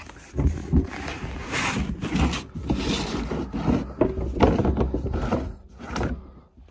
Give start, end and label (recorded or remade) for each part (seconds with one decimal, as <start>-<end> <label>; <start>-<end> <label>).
0.0-6.7 recorded